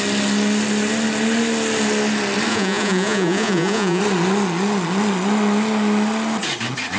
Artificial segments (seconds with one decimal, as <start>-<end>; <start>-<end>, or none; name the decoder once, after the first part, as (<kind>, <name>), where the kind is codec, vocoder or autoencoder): 2.5-4.0 (vocoder, Vocos)